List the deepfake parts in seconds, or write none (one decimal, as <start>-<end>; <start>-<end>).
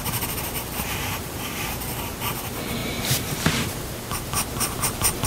0.9-1.7; 2.8-4.0; 4.5-5.3